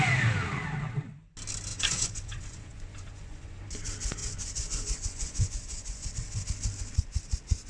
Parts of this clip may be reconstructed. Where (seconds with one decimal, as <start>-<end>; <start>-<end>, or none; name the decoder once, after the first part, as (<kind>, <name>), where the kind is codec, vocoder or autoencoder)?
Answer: 1.7-3.6 (vocoder, Vocos); 4.2-6.1